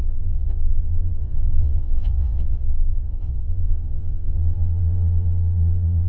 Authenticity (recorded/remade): remade